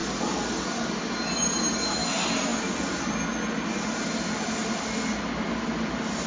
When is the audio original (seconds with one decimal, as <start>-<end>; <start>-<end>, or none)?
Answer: 0.0-6.3